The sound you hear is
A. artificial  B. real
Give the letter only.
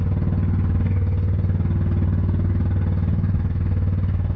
B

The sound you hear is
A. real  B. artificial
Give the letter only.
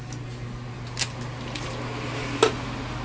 A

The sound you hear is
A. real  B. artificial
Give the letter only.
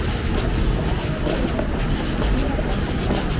A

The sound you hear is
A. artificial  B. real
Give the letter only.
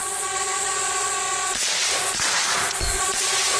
A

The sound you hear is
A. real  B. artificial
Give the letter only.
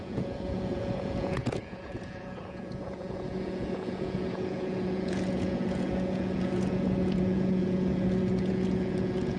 B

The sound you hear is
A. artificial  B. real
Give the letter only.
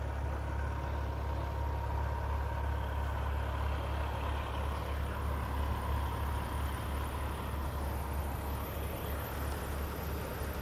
B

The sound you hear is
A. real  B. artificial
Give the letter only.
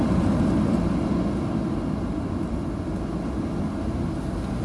A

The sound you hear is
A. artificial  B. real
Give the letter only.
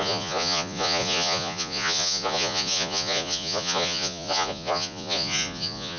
A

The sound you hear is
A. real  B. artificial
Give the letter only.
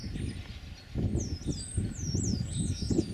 A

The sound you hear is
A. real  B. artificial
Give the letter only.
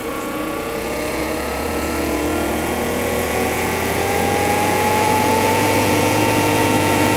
B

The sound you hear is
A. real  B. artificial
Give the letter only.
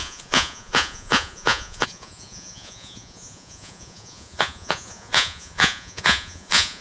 B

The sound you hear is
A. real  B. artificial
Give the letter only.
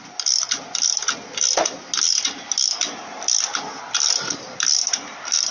A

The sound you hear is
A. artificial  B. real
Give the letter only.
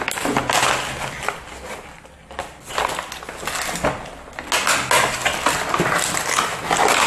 B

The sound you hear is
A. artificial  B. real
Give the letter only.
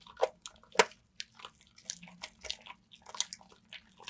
B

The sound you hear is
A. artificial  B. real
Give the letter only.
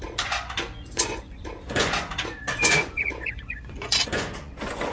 A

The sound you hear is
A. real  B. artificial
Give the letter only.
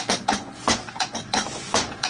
B